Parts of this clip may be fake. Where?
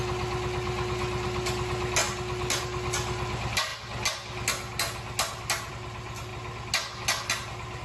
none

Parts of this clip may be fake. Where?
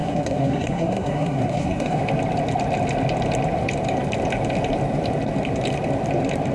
0.0-2.0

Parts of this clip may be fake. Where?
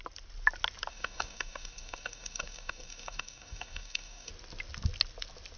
0.9-4.3